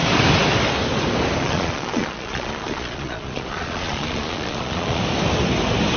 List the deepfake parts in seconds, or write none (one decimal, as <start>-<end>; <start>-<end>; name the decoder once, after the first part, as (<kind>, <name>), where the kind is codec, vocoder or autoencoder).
1.4-5.0 (vocoder, Vocos)